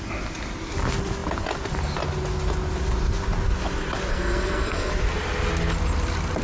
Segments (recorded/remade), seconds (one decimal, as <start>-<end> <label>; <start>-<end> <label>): 0.0-4.1 recorded; 4.1-4.9 remade; 4.9-6.4 recorded